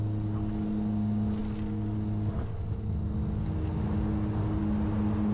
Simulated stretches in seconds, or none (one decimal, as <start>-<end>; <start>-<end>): none